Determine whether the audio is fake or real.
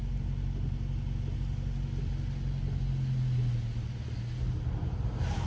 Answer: real